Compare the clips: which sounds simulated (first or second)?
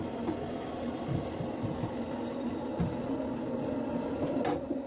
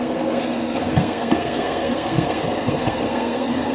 second